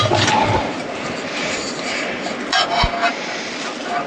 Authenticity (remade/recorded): recorded